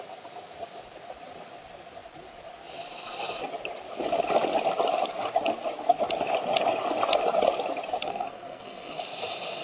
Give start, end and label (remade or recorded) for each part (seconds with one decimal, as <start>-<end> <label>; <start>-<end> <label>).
0.0-8.1 recorded; 8.1-9.0 remade; 9.0-9.6 recorded